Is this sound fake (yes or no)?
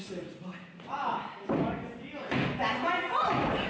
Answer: no